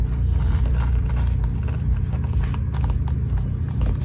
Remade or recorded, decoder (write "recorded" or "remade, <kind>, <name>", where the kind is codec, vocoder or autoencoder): recorded